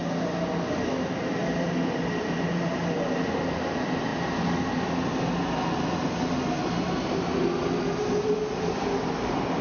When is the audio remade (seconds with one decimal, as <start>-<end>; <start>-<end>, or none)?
none